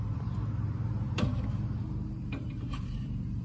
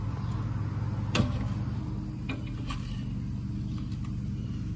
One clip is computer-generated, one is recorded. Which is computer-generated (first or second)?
first